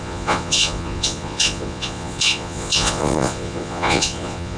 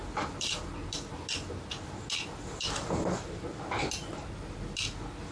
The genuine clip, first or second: second